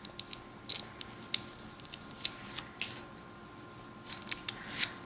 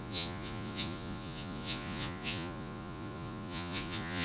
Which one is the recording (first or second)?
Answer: first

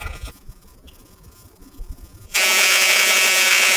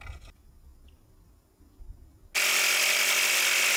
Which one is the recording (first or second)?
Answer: second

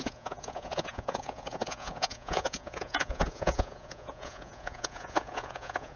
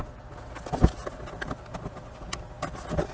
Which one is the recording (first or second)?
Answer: second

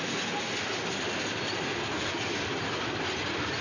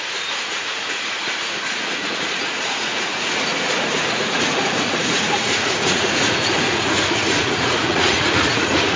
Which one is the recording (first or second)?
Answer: first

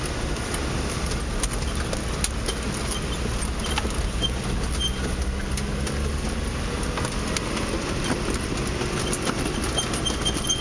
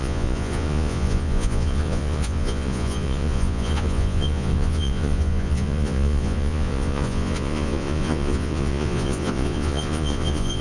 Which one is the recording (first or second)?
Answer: first